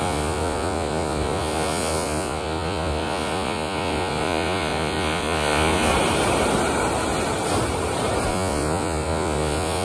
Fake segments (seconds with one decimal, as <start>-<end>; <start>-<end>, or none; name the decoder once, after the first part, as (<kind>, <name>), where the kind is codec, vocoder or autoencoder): 0.0-5.9 (vocoder, Vocos); 8.3-9.8